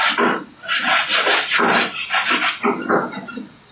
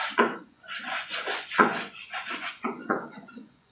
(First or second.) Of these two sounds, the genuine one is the first